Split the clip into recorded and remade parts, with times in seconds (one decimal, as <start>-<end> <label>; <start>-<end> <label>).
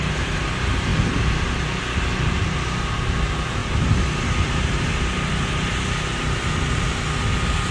0.0-7.7 recorded